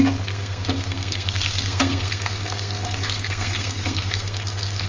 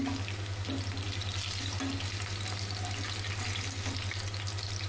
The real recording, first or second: second